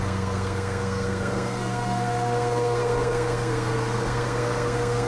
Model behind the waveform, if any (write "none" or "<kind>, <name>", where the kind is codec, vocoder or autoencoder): codec, SNAC